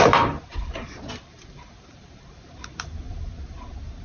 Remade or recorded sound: remade